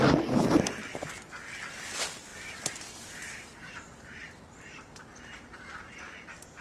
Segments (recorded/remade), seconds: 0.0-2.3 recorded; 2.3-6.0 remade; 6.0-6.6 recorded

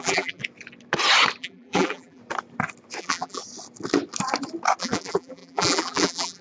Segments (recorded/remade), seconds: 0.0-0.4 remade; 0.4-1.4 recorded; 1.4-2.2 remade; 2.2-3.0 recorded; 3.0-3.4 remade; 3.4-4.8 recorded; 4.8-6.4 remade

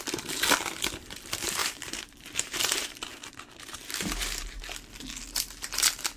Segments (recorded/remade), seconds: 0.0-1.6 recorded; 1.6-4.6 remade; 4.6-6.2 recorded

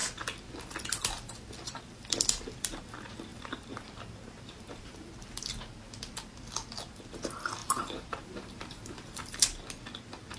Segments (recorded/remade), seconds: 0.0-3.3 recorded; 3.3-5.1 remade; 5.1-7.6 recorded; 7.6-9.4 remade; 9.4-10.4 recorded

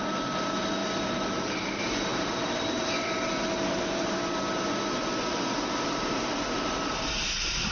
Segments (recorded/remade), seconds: 0.0-7.7 remade

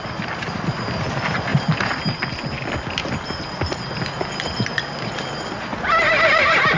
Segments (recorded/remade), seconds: 0.0-6.8 recorded

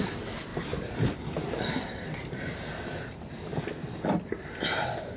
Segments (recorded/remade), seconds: 0.0-0.5 recorded; 0.5-3.2 remade; 3.2-5.2 recorded

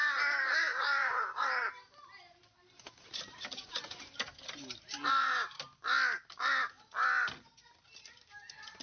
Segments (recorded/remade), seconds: 0.0-0.7 recorded; 0.7-5.6 remade; 5.6-8.8 recorded